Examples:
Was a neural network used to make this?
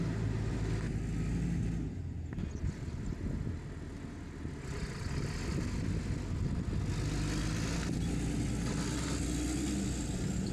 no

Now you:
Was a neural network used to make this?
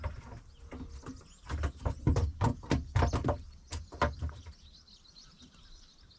no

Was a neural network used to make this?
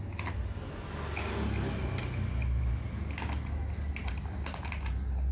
no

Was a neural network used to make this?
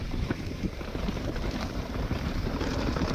yes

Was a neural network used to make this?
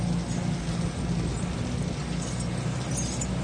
no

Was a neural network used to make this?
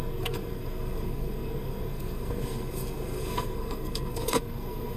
yes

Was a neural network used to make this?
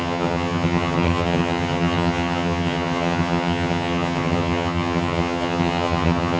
yes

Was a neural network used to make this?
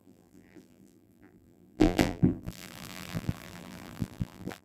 yes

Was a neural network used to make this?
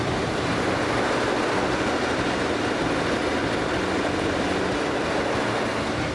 no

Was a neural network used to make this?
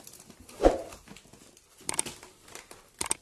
no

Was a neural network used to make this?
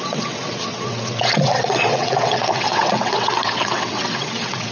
yes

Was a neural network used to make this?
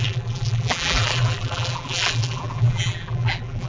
yes